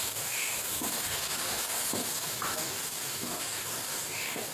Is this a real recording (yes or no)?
no